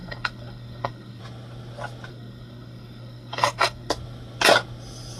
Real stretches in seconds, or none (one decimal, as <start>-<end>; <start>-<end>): 1.2-2.1; 3.9-5.2